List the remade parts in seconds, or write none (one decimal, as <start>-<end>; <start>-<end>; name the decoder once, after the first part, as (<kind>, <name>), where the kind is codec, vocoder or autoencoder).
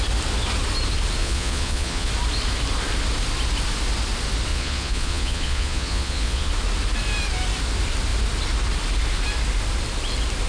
1.2-2.1 (vocoder, Vocos); 4.5-6.5